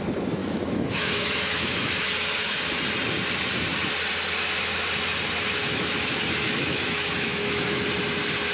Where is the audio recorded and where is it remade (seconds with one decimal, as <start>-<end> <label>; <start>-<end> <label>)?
0.0-0.4 recorded; 0.4-2.8 remade; 2.8-5.6 recorded; 5.6-7.8 remade; 7.8-8.5 recorded